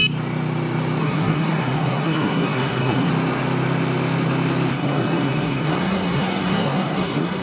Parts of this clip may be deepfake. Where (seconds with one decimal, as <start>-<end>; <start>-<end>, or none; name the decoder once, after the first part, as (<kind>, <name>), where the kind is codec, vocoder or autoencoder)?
1.0-3.1 (codec, SNAC); 4.7-7.4